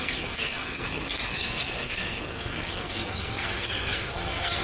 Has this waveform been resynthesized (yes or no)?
yes